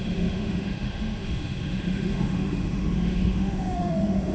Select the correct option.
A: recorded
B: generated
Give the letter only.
B